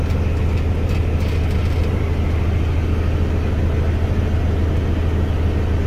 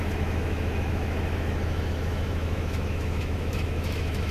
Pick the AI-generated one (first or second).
second